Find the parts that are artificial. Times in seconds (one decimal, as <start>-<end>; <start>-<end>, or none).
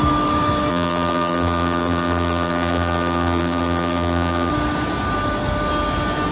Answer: 0.7-4.5